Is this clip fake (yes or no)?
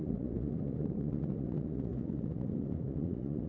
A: yes